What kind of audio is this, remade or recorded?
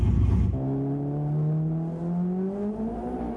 recorded